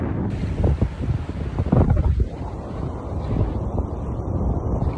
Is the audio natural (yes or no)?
yes